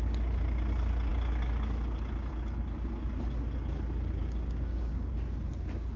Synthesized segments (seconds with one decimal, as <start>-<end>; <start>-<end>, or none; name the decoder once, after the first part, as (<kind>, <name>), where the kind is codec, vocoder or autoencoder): 4.2-5.1 (codec, DAC)